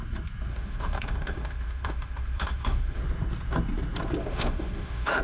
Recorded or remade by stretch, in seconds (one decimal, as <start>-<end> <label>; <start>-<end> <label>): 0.0-0.5 recorded; 0.5-3.0 remade; 3.0-4.2 recorded; 4.2-5.2 remade